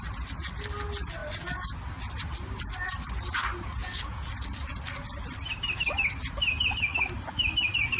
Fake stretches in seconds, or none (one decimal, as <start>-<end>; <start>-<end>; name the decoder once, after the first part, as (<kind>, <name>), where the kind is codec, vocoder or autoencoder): 3.8-4.3 (vocoder, Vocos)